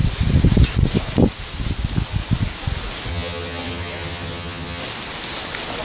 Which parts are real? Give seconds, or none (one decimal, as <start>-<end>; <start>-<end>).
0.0-3.1; 4.8-5.8